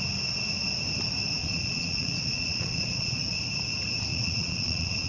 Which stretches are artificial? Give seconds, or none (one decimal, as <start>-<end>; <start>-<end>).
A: 1.4-3.4; 4.1-5.1